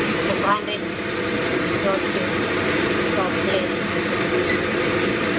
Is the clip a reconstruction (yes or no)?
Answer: yes